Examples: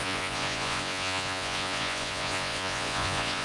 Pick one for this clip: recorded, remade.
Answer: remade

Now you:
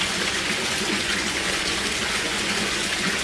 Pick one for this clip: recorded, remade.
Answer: remade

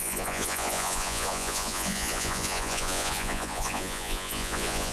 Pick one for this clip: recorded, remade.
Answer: remade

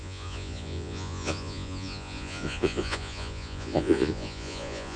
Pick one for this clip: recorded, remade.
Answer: remade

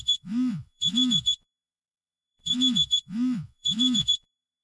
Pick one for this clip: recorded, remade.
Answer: remade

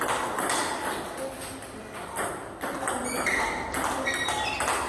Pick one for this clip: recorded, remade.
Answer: recorded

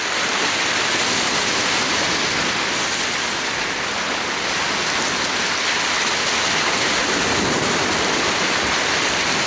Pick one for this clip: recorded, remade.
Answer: recorded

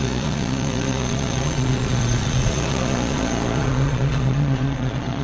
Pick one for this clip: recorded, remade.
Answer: remade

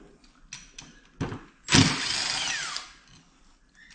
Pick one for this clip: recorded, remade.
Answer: recorded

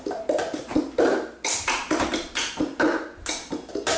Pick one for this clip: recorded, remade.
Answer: recorded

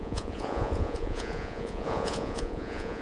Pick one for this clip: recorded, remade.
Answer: remade